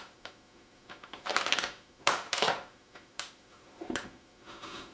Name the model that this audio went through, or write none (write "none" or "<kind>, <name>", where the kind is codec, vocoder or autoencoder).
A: autoencoder, DAC-VAE